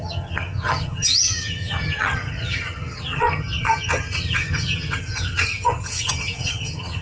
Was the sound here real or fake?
fake